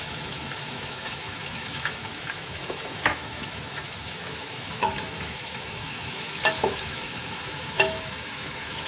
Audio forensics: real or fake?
fake